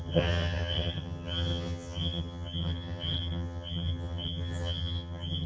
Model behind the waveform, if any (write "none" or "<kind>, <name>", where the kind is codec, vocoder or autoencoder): vocoder, HiFi-GAN